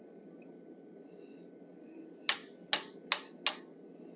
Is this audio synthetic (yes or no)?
no